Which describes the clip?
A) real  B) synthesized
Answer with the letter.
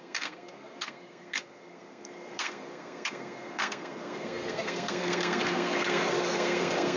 B